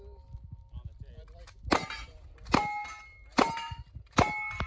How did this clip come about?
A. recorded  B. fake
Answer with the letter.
A